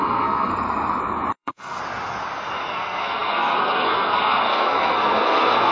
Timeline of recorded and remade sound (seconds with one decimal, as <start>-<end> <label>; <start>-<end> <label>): 0.0-0.5 remade; 0.5-1.3 recorded; 1.3-1.8 remade; 1.8-2.7 recorded; 2.7-5.7 remade